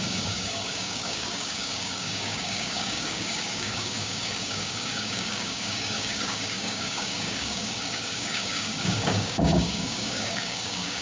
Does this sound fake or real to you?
fake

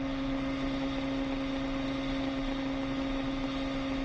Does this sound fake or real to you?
real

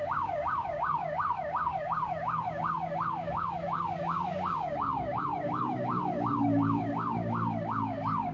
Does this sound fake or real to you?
fake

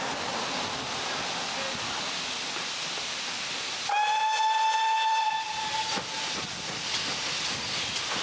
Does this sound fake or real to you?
real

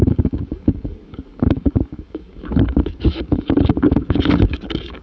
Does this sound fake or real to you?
fake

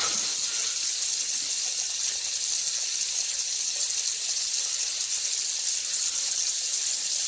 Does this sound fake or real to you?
real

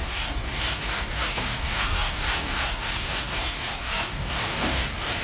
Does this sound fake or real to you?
fake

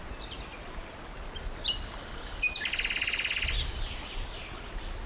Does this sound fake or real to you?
real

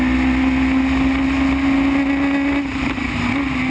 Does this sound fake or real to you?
real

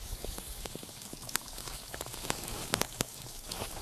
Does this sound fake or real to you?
fake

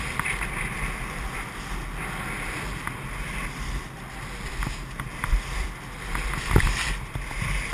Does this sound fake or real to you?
real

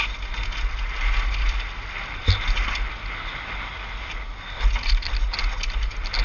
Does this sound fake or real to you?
real